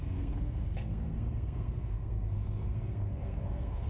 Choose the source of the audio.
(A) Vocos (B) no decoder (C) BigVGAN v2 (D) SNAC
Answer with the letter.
D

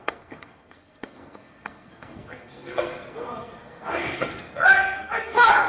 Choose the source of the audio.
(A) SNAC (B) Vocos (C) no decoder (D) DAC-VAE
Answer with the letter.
A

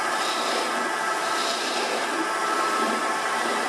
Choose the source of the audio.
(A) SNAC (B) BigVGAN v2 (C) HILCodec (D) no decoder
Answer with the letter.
B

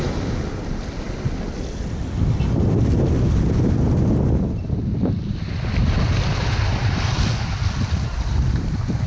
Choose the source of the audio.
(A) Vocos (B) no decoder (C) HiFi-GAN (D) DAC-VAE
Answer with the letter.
B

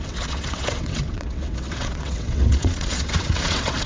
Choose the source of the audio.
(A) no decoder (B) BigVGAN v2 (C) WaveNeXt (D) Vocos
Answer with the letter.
C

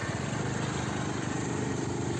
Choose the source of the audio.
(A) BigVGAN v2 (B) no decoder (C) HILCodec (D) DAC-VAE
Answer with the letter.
B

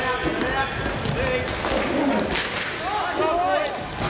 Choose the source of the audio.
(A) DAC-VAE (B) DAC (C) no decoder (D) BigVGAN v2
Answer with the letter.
C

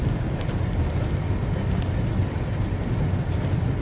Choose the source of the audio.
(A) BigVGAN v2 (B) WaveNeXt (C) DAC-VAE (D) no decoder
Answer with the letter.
D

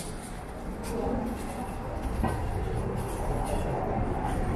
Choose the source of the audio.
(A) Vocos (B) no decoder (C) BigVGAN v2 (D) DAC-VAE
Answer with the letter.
B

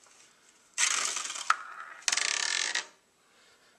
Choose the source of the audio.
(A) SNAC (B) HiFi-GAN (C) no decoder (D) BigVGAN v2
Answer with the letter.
C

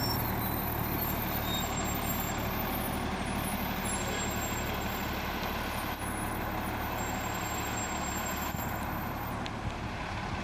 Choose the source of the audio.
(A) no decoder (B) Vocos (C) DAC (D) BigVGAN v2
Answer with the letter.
A